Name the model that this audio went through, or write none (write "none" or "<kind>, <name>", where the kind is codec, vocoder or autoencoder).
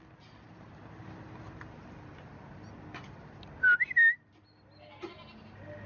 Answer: none